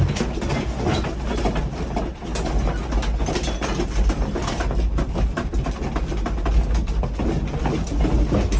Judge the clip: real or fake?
real